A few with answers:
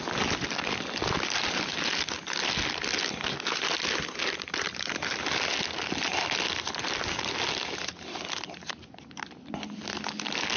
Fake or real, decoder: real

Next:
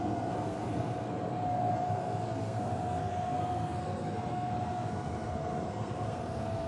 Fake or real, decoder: fake, codec, SNAC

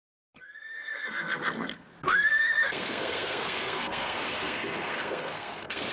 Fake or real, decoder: fake, codec, SNAC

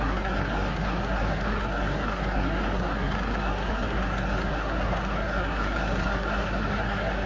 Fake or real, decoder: fake, codec, SNAC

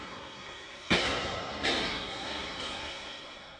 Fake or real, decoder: fake, codec, SNAC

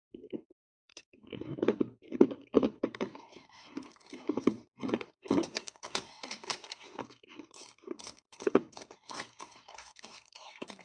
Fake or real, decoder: fake, codec, SNAC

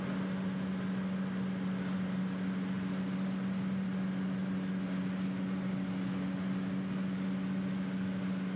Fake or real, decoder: real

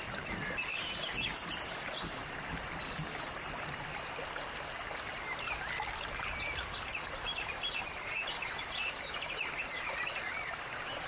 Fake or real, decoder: real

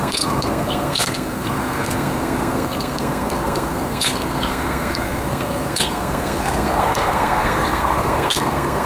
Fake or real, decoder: fake, codec, SNAC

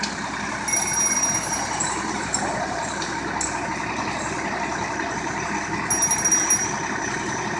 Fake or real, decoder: real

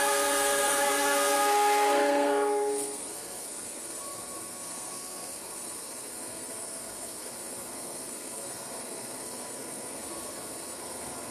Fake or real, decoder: fake, codec, SNAC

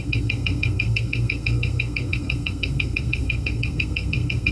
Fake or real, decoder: fake, codec, SNAC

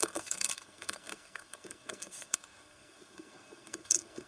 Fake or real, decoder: fake, codec, SNAC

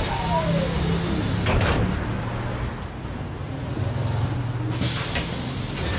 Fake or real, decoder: real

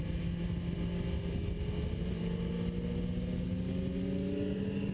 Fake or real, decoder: real